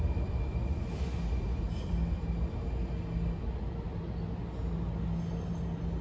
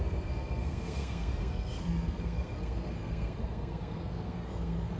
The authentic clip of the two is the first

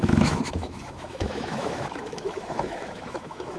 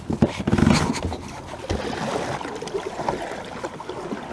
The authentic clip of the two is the second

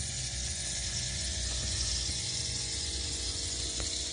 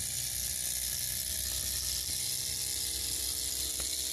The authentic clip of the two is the second